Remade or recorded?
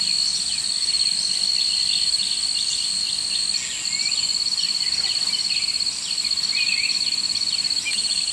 recorded